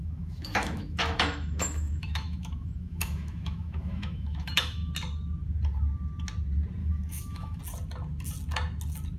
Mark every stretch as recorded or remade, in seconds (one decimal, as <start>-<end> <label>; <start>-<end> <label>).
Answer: 0.0-4.9 remade; 4.9-6.8 recorded; 6.8-7.6 remade; 7.6-9.2 recorded